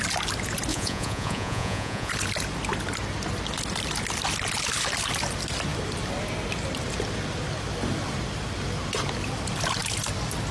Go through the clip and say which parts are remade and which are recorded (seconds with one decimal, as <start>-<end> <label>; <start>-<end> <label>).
0.0-0.7 recorded; 0.7-2.1 remade; 2.1-10.5 recorded